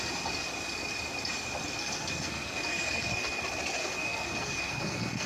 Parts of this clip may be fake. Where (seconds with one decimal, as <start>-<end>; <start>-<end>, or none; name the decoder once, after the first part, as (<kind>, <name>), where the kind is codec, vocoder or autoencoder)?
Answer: 1.8-3.4 (codec, SNAC); 3.8-5.3